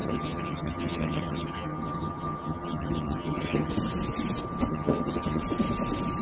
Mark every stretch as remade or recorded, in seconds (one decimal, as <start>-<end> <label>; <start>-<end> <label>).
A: 0.0-3.7 remade; 3.7-4.7 recorded; 4.7-5.4 remade; 5.4-6.2 recorded